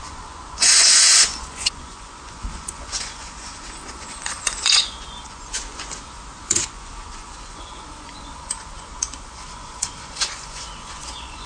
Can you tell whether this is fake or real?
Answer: fake